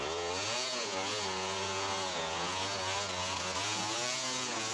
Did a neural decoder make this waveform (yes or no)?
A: yes